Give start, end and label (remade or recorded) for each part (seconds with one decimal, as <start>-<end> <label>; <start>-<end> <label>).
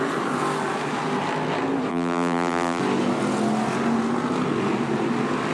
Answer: 0.0-1.9 recorded; 1.9-2.8 remade; 2.8-5.5 recorded